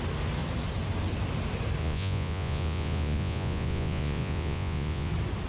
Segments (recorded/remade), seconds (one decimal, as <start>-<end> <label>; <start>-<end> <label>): 0.0-1.8 recorded; 1.8-5.1 remade; 5.1-5.5 recorded